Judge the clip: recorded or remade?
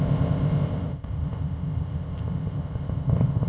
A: remade